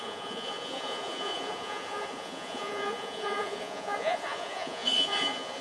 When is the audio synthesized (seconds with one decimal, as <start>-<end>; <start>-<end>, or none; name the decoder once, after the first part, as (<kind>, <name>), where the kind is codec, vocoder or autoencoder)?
0.0-5.6 (vocoder, Vocos)